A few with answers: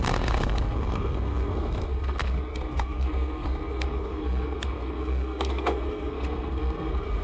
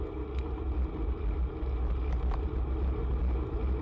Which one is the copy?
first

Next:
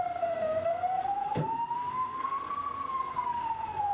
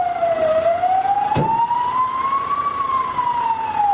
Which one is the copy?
first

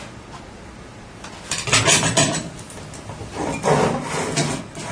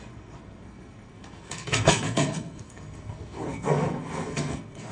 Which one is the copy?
second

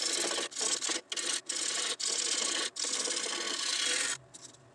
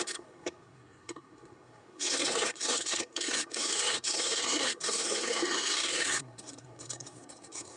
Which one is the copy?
second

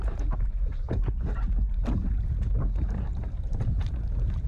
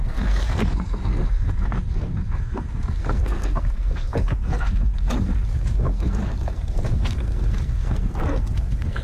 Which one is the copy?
second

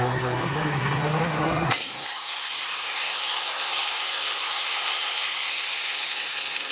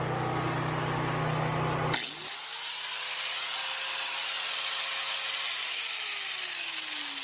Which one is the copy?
first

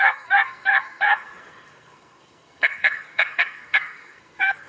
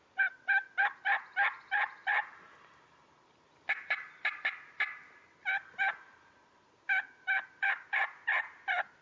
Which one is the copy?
first